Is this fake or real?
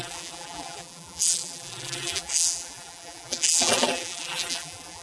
fake